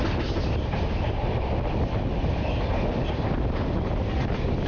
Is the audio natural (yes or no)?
yes